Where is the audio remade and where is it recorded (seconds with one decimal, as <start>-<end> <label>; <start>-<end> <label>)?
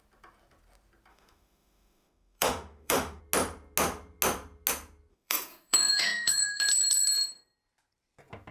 0.0-1.1 recorded; 1.1-3.2 remade; 3.2-5.1 recorded; 5.1-6.6 remade; 6.6-8.5 recorded